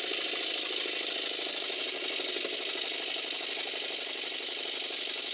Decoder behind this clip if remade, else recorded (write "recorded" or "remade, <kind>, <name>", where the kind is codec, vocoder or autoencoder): recorded